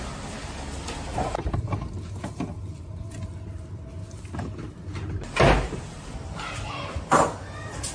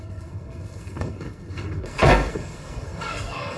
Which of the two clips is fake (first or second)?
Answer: second